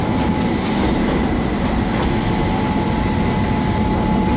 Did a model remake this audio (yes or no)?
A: no